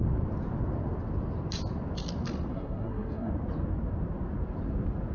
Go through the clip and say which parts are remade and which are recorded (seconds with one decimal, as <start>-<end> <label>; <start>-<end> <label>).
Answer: 0.0-2.5 recorded; 2.5-3.3 remade; 3.3-5.1 recorded